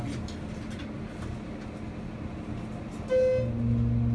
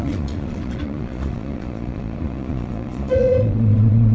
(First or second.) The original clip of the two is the first